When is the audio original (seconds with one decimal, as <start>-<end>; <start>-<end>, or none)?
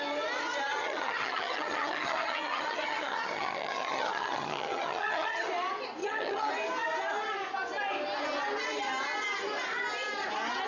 0.0-0.7; 5.5-6.0; 6.5-10.7